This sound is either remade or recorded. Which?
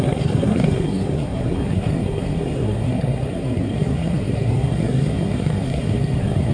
remade